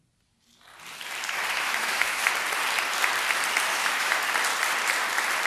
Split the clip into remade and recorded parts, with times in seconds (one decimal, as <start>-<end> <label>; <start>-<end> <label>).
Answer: 0.0-1.5 recorded; 1.5-2.2 remade; 2.2-3.7 recorded; 3.7-4.2 remade; 4.2-5.5 recorded